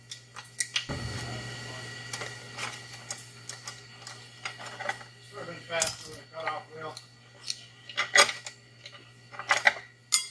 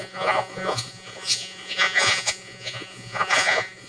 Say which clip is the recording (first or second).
first